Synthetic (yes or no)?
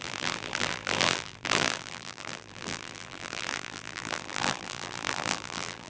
yes